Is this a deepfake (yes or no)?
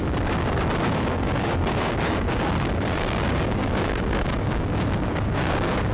yes